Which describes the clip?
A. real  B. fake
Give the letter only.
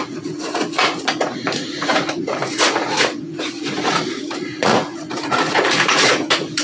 B